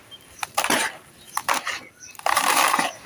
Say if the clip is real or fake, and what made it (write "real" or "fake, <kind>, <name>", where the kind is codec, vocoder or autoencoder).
fake, vocoder, BigVGAN v2